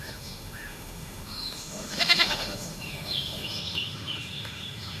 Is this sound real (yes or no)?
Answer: no